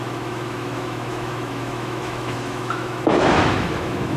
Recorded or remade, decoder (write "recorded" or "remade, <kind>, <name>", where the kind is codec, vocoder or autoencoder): remade, autoencoder, DAC-VAE